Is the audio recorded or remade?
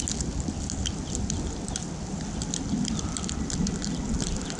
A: recorded